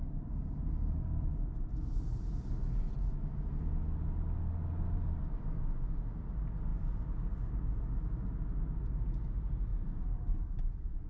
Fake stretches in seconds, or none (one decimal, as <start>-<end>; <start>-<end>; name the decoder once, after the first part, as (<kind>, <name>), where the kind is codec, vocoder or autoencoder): 9.7-11.1 (vocoder, BigVGAN v2)